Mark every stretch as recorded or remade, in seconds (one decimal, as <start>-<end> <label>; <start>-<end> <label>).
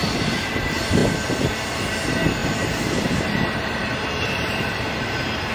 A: 0.0-2.4 recorded; 2.4-5.5 remade